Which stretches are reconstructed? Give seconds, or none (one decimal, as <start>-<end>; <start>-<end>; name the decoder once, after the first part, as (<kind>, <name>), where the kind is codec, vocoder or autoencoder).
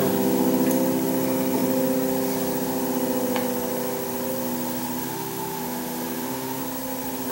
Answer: 5.0-6.6 (autoencoder, DAC-VAE)